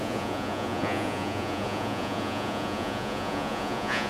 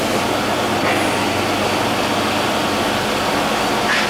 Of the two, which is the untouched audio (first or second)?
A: second